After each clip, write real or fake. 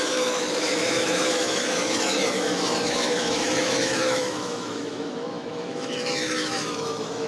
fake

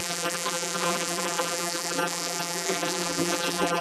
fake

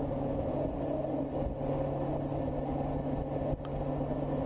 real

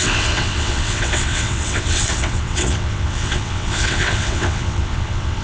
fake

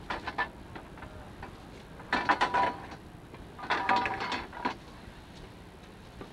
real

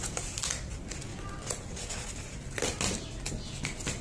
real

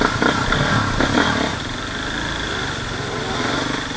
real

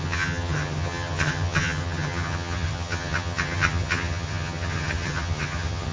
fake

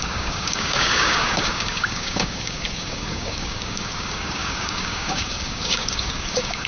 fake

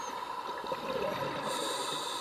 real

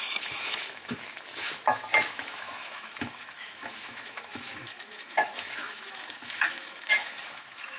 fake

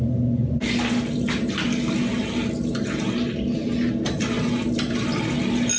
real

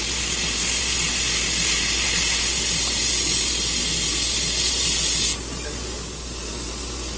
real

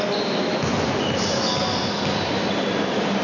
real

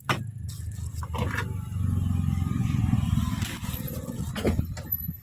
real